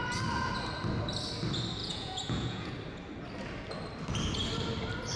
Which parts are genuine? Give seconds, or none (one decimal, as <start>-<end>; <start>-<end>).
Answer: 0.0-1.8; 2.7-5.2